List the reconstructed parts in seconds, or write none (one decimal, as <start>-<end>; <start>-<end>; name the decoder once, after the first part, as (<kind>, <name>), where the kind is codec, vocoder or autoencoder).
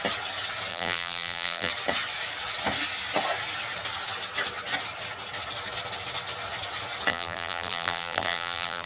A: 0.7-1.7 (vocoder, BigVGAN v2); 7.1-8.9